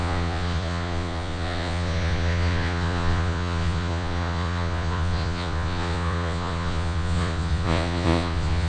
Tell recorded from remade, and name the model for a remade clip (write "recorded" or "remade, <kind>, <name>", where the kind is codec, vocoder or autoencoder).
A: remade, vocoder, Vocos